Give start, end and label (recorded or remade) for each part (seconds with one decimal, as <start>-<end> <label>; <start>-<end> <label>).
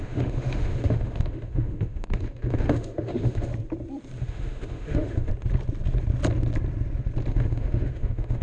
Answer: 0.0-3.5 remade; 3.5-4.2 recorded; 4.2-5.3 remade; 5.3-7.3 recorded; 7.3-8.4 remade